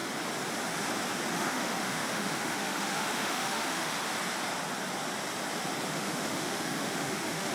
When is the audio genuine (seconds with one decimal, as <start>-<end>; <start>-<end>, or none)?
0.0-1.3; 3.9-5.9